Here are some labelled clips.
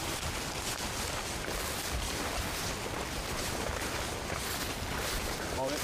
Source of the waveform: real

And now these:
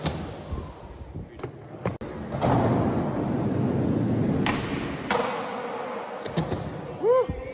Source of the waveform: real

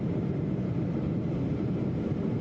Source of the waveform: fake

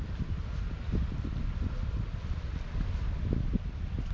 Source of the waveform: real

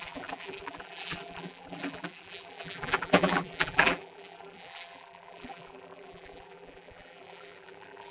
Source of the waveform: fake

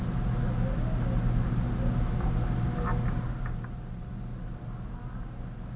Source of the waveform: real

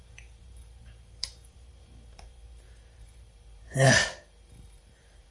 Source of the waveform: fake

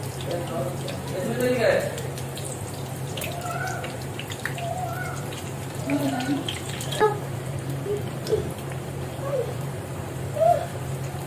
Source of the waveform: fake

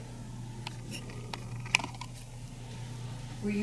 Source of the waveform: real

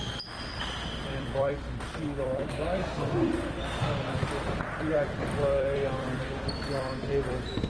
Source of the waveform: fake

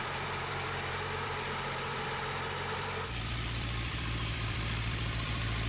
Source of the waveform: fake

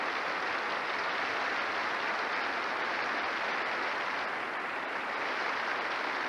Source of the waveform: real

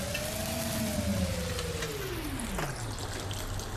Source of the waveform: real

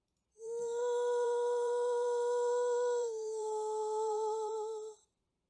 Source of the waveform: fake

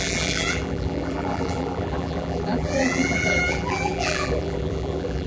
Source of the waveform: fake